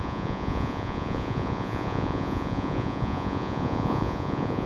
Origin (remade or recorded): remade